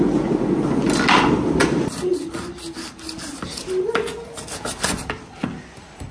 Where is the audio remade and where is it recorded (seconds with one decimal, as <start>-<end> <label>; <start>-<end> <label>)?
0.0-1.6 recorded; 1.6-2.3 remade; 2.3-6.1 recorded